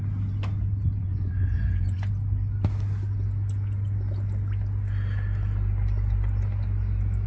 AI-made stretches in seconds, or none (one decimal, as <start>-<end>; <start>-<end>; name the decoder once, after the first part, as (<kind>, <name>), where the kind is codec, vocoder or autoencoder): 1.0-2.1 (vocoder, Vocos)